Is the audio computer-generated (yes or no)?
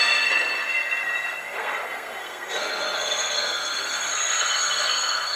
yes